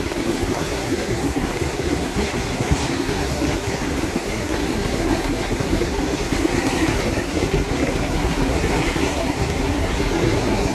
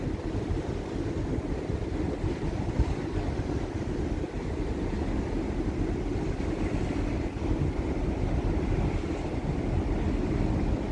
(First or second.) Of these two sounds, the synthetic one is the first